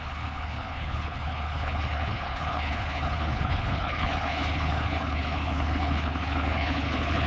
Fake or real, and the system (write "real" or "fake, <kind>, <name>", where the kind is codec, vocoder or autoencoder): fake, codec, HILCodec